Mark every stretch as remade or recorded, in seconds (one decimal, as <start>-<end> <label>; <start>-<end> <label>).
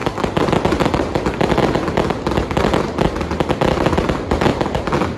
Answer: 0.0-5.2 recorded